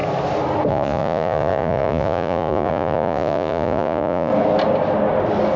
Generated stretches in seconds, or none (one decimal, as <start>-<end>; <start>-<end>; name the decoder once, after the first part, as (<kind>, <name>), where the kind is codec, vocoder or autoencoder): 0.7-4.3 (vocoder, Vocos)